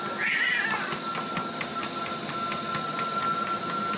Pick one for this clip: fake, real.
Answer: real